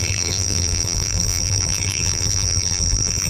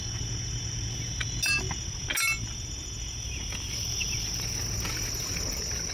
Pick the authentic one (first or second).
second